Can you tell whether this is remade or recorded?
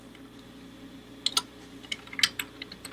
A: recorded